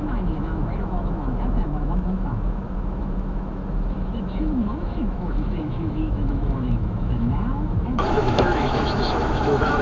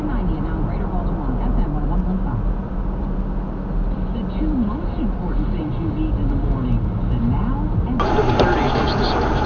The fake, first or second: first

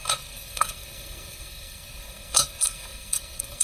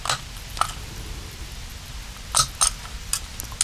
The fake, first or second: first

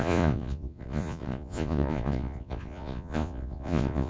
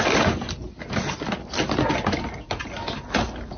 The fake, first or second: first